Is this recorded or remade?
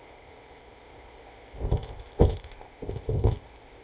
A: remade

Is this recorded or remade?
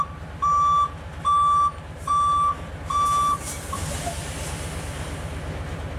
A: recorded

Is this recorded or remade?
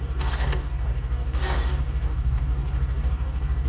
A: remade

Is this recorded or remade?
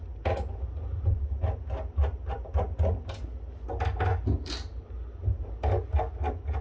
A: recorded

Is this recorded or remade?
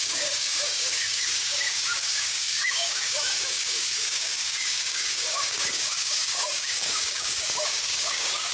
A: remade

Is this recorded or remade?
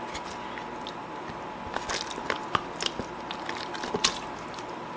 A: recorded